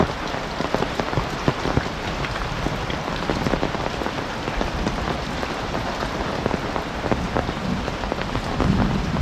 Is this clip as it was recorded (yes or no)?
no